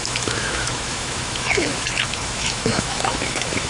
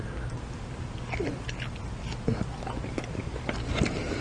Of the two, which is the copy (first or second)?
first